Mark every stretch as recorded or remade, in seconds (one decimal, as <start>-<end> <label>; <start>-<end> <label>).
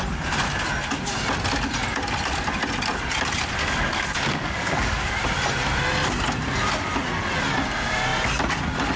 0.0-3.6 recorded; 3.6-5.1 remade; 5.1-9.0 recorded